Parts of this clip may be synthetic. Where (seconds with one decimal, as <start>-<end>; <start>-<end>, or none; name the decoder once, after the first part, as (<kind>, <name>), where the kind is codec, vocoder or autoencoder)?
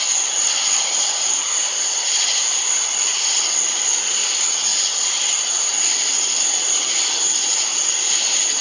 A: none